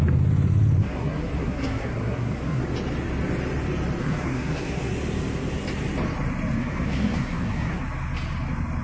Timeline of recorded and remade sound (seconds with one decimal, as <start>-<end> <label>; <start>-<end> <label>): 0.0-0.8 recorded; 0.8-2.6 remade; 2.6-4.0 recorded; 4.0-4.9 remade; 4.9-6.6 recorded; 6.6-7.8 remade; 7.8-8.8 recorded